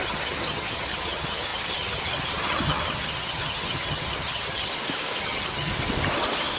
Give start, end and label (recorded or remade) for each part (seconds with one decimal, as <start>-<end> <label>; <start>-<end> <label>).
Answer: 0.0-4.7 remade; 4.7-5.2 recorded; 5.2-5.7 remade; 5.7-6.6 recorded

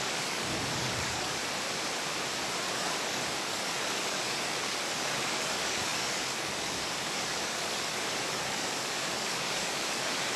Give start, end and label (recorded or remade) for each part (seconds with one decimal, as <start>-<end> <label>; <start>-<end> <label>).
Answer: 0.0-1.4 remade; 1.4-2.7 recorded; 2.7-10.4 remade

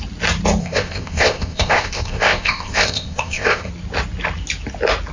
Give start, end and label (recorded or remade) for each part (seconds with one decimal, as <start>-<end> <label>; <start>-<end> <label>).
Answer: 0.0-0.6 recorded; 0.6-3.7 remade; 3.7-5.1 recorded

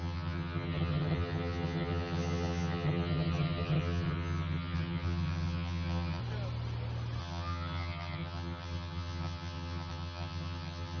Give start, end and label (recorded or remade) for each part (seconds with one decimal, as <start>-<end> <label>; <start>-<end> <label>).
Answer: 0.0-6.2 remade; 6.2-7.2 recorded; 7.2-11.0 remade